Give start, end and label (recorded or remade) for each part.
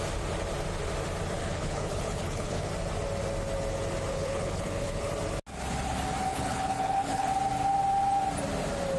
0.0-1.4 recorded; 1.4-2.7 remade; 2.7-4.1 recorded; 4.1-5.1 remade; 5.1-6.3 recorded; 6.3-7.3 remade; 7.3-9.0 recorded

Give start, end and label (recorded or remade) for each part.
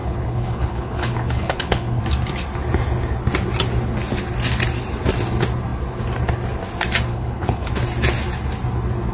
0.0-2.0 remade; 2.0-7.1 recorded; 7.1-7.7 remade; 7.7-9.1 recorded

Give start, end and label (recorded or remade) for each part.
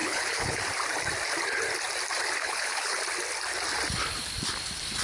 0.0-0.6 remade; 0.6-2.4 recorded; 2.4-3.0 remade; 3.0-5.0 recorded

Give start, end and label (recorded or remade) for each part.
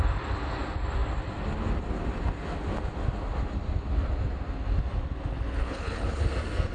0.0-5.3 recorded; 5.3-6.2 remade; 6.2-6.7 recorded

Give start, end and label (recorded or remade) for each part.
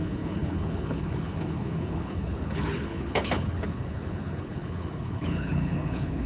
0.0-6.3 remade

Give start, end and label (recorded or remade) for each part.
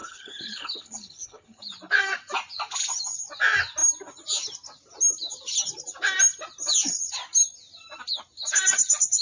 0.0-1.6 remade; 1.6-9.2 recorded